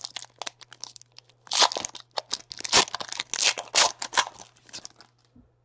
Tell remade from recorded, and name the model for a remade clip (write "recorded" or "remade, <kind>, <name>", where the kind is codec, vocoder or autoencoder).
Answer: recorded